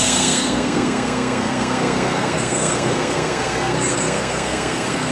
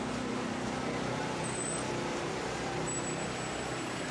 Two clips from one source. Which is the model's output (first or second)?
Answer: first